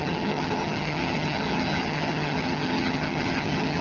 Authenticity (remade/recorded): remade